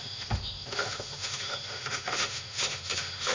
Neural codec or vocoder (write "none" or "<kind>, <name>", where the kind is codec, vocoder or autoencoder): autoencoder, DAC-VAE